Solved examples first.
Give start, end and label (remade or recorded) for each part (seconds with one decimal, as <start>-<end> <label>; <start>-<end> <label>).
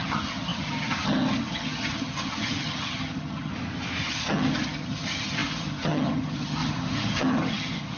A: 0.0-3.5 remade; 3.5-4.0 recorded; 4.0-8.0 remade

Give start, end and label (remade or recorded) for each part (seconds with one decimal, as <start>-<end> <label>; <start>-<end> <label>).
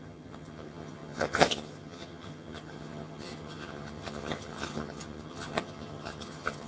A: 0.0-6.7 remade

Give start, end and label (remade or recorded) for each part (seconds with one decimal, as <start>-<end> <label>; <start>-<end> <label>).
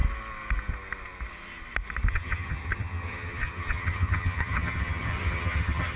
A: 0.0-2.1 recorded; 2.1-6.0 remade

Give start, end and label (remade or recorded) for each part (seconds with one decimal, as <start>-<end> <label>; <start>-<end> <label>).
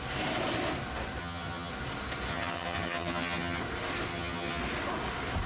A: 0.0-1.2 recorded; 1.2-1.7 remade; 1.7-2.3 recorded; 2.3-3.6 remade; 3.6-4.1 recorded; 4.1-4.6 remade; 4.6-5.5 recorded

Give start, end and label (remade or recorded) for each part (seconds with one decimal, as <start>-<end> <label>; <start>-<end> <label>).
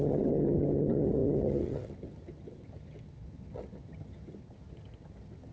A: 0.0-5.5 remade